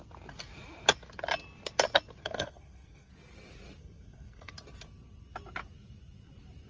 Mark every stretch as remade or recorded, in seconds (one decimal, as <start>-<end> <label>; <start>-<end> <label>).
0.0-2.2 recorded; 2.2-3.1 remade; 3.1-3.8 recorded; 3.8-4.5 remade; 4.5-6.7 recorded